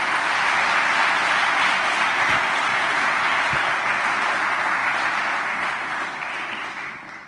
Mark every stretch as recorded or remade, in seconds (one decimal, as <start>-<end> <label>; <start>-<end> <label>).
0.0-2.7 recorded; 2.7-3.2 remade; 3.2-7.3 recorded